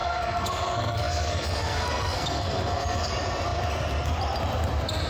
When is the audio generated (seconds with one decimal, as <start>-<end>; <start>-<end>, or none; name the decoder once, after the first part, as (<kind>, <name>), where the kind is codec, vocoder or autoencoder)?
0.0-3.1 (codec, SNAC)

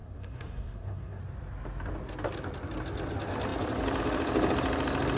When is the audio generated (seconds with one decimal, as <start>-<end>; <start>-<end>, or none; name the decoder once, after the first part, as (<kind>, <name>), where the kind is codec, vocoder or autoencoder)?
0.0-1.2 (codec, SNAC)

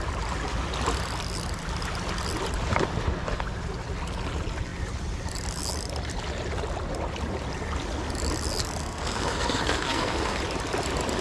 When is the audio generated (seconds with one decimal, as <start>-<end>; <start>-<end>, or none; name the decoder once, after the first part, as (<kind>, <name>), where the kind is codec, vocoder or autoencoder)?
8.8-10.4 (codec, SNAC)